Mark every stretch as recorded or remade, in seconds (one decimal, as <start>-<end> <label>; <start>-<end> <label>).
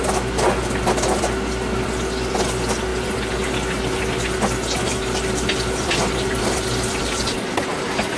0.0-8.2 recorded